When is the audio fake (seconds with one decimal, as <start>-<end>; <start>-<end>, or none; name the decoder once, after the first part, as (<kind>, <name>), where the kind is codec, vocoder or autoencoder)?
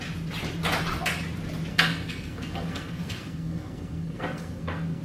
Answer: 1.7-5.0 (codec, SNAC)